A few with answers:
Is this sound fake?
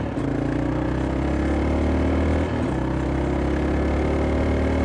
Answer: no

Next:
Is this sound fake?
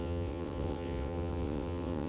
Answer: yes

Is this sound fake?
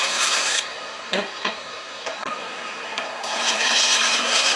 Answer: yes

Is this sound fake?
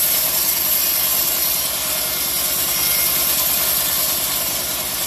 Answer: no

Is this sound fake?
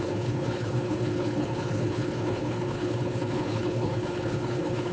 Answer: yes